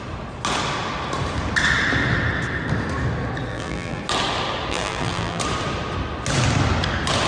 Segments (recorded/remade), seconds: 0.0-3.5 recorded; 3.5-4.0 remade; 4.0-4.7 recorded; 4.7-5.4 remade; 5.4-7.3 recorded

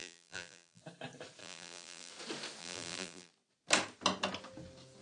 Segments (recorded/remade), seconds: 0.0-0.8 remade; 0.8-1.4 recorded; 1.4-2.1 remade; 2.1-2.6 recorded; 2.6-3.3 remade; 3.3-5.0 recorded

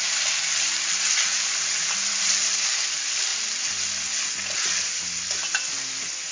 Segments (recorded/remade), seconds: 0.0-3.3 remade; 3.3-4.6 recorded; 4.6-6.3 remade

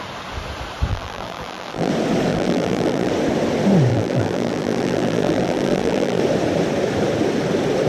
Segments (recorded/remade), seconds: 0.0-0.9 recorded; 0.9-1.9 remade; 1.9-2.3 recorded; 2.3-3.1 remade; 3.1-3.9 recorded; 3.9-6.2 remade; 6.2-7.9 recorded

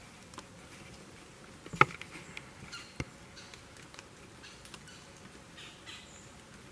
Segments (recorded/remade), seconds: 0.0-6.7 recorded

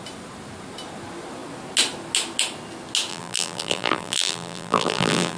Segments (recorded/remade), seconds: 0.0-3.1 recorded; 3.1-5.4 remade